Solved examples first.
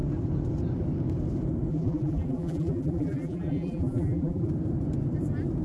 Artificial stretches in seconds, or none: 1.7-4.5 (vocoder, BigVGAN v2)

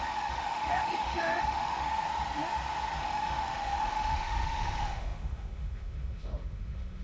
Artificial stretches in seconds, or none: 0.0-1.9 (autoencoder, DAC-VAE); 3.0-7.0

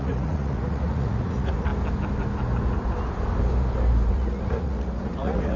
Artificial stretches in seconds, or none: 0.0-1.7 (vocoder, Vocos); 4.1-5.6

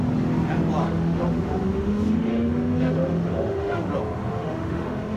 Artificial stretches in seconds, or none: 0.8-3.9 (autoencoder, DAC-VAE); 4.3-5.2

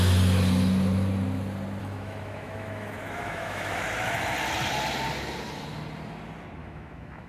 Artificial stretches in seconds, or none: 1.8-3.8 (autoencoder, DAC-VAE); 6.6-7.3

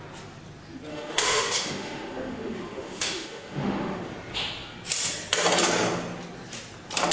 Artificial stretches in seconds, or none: 0.9-4.0 (autoencoder, DAC-VAE)